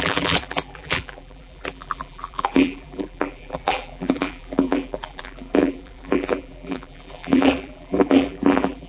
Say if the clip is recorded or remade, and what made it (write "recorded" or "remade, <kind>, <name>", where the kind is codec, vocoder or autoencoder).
remade, vocoder, BigVGAN v2